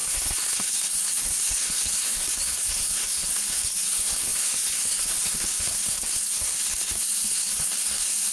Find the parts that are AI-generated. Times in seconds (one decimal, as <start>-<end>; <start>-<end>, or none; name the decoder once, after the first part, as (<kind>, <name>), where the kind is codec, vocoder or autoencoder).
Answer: 0.0-8.3 (codec, SNAC)